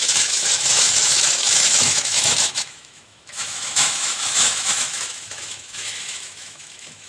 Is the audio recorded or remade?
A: remade